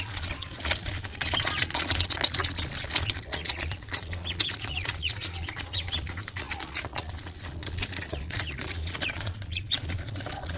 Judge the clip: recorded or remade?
remade